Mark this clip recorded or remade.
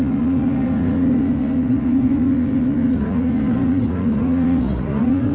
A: remade